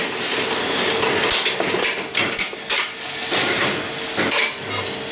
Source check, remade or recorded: recorded